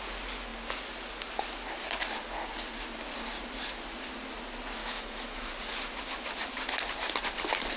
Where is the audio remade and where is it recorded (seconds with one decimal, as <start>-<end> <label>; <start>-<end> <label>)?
0.0-4.8 recorded; 4.8-5.5 remade; 5.5-7.8 recorded